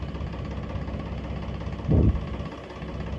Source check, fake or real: real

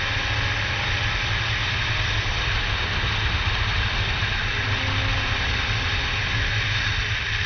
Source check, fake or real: real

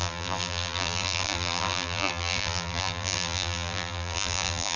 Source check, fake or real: fake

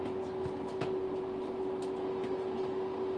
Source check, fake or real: real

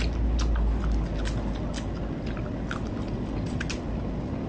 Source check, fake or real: real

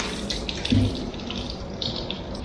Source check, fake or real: real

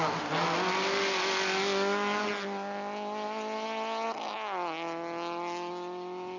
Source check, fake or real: real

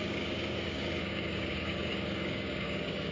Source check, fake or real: fake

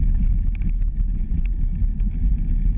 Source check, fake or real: real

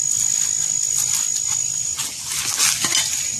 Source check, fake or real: real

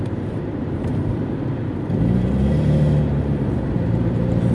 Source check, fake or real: fake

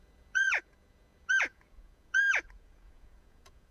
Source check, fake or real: fake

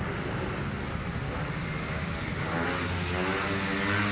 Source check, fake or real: real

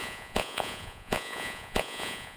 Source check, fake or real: fake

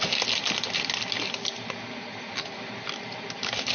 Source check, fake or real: real